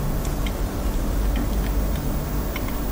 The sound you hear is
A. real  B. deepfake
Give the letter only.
A